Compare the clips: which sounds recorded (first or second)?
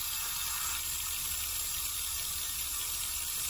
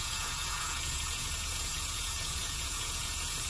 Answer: first